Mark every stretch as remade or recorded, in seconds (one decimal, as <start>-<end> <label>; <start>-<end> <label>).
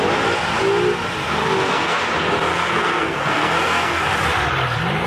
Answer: 0.0-1.4 recorded; 1.4-2.0 remade; 2.0-2.5 recorded; 2.5-4.0 remade; 4.0-5.1 recorded